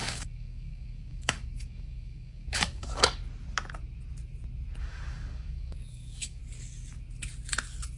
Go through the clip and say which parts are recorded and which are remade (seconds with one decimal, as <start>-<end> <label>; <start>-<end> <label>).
0.0-3.2 remade; 3.2-4.8 recorded; 4.8-6.4 remade; 6.4-8.0 recorded